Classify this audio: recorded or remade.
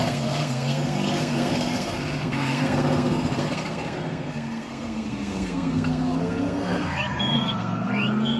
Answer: remade